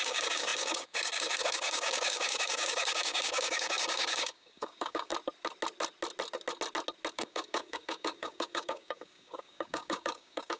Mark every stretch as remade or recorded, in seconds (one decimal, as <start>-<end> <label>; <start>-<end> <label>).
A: 0.0-5.1 remade; 5.1-7.1 recorded; 7.1-10.6 remade